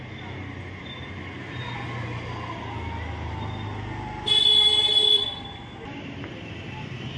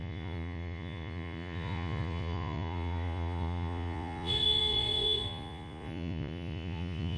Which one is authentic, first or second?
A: first